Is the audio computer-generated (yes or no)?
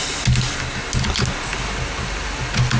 no